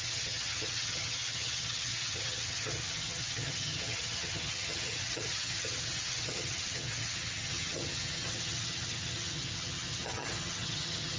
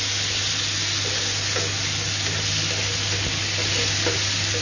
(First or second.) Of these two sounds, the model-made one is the first